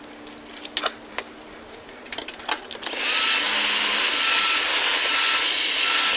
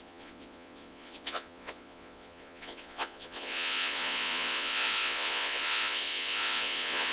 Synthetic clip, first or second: second